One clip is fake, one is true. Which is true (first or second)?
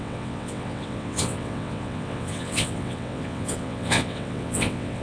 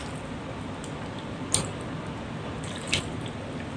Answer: second